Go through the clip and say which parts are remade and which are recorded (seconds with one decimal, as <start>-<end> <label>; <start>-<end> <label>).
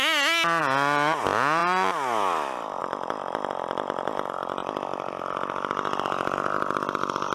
0.0-7.3 recorded